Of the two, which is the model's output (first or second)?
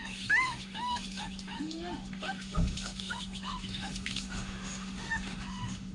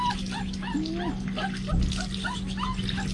first